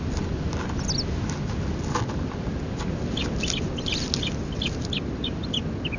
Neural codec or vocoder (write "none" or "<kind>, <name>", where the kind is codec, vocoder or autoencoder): none